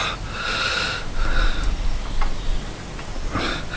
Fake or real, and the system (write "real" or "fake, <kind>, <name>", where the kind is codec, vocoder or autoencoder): real